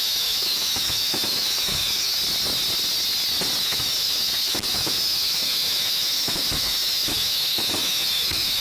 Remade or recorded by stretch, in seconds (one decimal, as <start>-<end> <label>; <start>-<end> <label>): 0.0-2.2 remade; 2.2-3.6 recorded; 3.6-8.6 remade